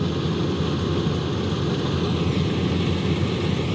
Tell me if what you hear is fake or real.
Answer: real